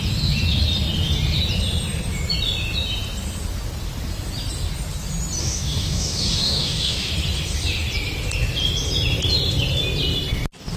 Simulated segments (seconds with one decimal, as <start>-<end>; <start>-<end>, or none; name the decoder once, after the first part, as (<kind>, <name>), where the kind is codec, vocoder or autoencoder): 5.4-7.1 (codec, DAC)